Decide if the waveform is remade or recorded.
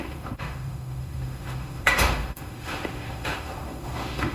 remade